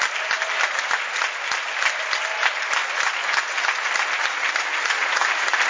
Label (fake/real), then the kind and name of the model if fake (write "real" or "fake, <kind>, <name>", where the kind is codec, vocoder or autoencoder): real